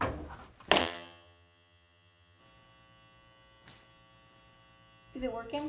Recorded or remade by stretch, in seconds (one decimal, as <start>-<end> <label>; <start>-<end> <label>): 0.0-0.8 recorded; 0.8-2.4 remade; 2.4-5.7 recorded